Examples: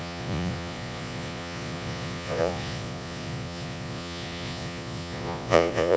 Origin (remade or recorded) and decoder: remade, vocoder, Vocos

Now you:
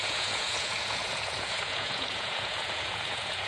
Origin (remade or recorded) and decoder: remade, vocoder, Vocos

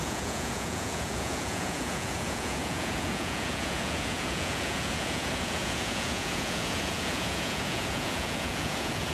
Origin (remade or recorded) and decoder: remade, vocoder, Vocos